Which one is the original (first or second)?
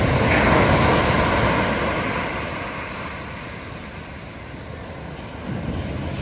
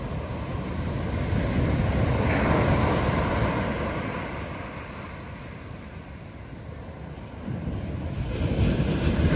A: first